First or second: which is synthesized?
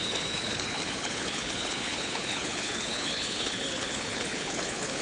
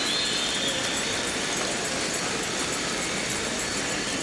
first